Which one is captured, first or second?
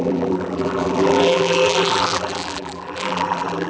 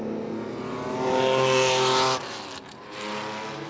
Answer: second